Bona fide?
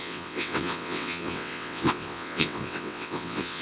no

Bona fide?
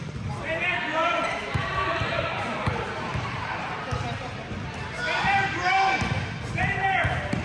no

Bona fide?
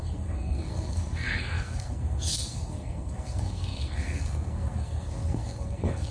no